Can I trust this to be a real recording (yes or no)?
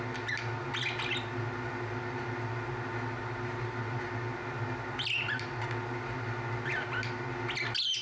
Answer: yes